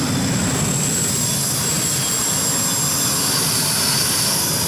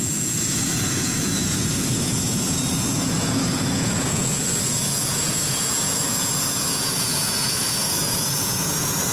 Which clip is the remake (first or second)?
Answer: second